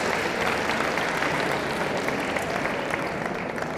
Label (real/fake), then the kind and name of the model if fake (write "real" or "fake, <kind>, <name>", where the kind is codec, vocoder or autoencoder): real